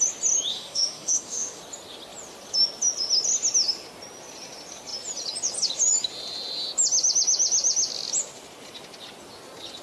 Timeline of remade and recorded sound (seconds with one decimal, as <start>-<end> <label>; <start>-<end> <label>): 0.0-0.5 recorded; 0.5-1.6 remade; 1.6-9.8 recorded